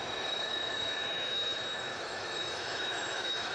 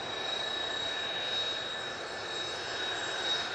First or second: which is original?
second